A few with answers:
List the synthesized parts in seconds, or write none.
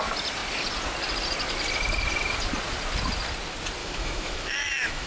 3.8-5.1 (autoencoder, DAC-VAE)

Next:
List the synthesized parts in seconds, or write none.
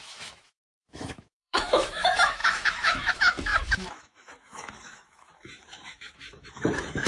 0.0-7.1 (autoencoder, DAC-VAE)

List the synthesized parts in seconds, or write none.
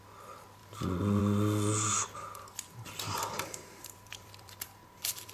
2.0-5.3 (vocoder, BigVGAN v2)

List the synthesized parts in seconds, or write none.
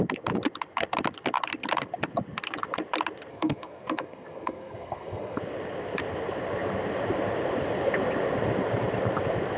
3.3-5.4 (codec, SNAC)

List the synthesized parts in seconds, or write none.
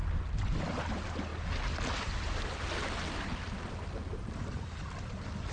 none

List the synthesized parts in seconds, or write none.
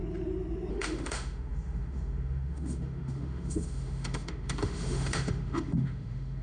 0.7-6.4 (autoencoder, DAC-VAE)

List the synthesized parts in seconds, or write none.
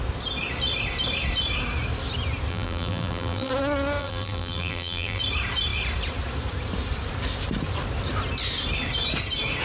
2.5-3.5 (vocoder, BigVGAN v2); 4.0-5.2